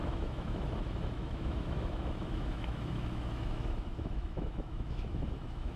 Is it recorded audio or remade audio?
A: remade